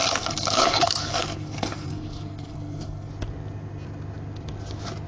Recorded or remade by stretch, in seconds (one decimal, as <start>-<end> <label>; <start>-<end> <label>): 0.0-3.1 remade; 3.1-5.1 recorded